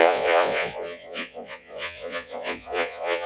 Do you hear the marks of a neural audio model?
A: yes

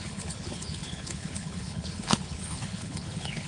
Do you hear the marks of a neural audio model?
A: yes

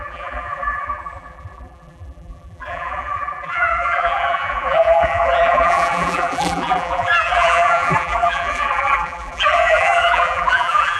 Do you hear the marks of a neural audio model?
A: yes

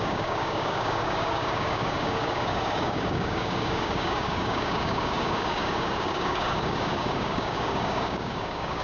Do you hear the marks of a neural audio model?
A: yes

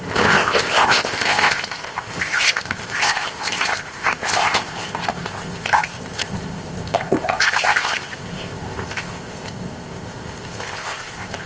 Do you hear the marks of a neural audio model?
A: yes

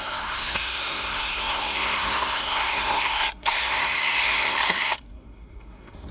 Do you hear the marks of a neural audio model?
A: yes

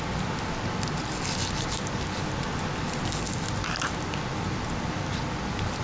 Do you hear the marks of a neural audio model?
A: no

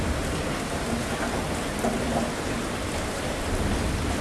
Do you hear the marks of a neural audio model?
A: no